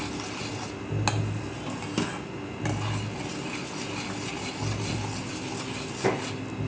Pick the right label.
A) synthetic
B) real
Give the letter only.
B